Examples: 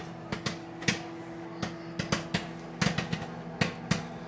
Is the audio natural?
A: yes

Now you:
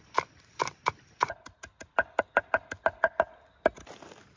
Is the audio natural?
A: yes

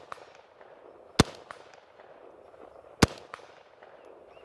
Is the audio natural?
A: yes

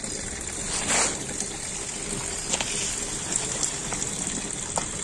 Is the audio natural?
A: yes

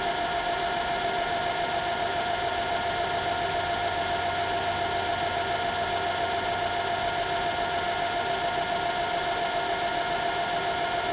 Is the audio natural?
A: yes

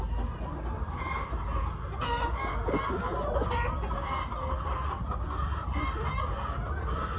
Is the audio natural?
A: yes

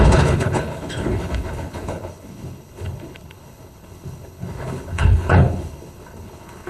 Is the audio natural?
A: no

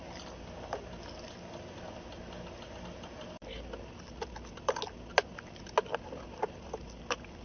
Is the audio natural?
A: yes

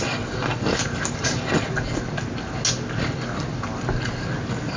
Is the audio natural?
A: yes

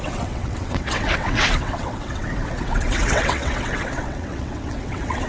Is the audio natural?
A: no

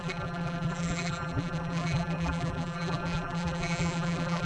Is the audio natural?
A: no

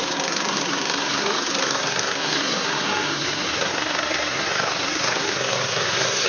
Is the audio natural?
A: no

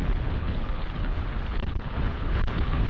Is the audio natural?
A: no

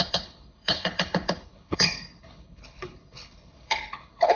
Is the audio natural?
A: no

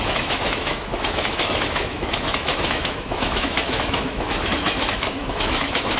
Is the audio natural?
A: no